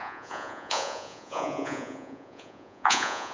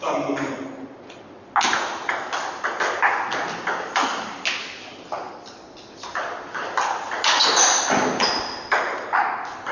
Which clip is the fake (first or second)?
first